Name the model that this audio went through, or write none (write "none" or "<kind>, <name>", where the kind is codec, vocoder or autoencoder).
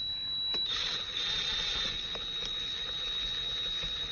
none